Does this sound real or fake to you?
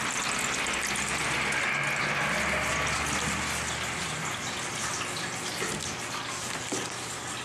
real